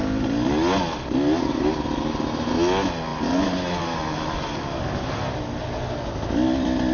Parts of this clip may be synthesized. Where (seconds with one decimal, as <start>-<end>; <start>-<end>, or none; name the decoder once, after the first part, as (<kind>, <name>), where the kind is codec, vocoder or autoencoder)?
none